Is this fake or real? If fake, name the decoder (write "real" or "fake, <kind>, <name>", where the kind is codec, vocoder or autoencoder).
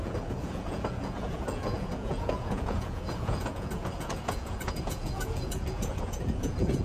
fake, vocoder, Vocos